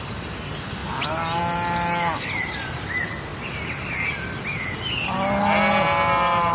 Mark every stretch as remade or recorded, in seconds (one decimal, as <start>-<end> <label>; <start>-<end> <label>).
0.0-6.5 recorded